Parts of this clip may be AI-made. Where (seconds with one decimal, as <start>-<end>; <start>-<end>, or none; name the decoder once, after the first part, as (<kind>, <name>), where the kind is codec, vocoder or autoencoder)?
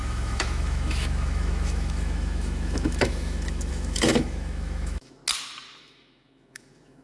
0.0-5.2 (autoencoder, DAC-VAE); 5.8-7.0